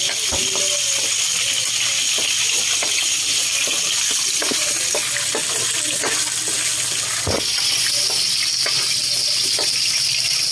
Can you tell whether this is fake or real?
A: real